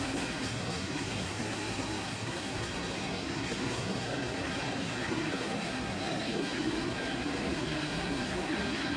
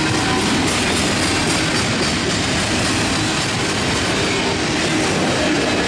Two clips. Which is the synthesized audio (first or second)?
first